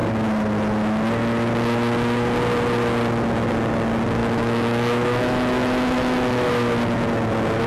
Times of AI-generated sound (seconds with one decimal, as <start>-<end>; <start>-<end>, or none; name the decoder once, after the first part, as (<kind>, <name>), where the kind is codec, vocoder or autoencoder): 4.2-6.5 (autoencoder, DAC-VAE)